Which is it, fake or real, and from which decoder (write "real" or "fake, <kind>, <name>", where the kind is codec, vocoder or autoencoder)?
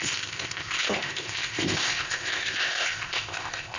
fake, codec, ZipCodec